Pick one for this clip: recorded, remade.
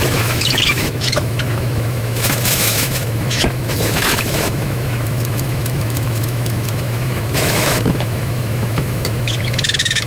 remade